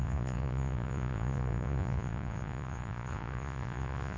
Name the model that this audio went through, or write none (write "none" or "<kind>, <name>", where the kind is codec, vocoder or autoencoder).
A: vocoder, Vocos